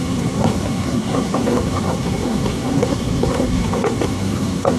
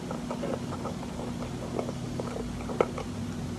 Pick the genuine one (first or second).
second